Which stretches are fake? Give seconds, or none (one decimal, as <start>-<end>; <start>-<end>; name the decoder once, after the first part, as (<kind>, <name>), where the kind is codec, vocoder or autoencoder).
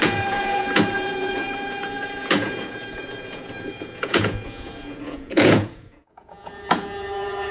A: 0.0-7.5 (vocoder, Vocos)